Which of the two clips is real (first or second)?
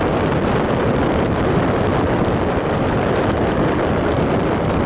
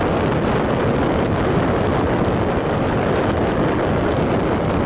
second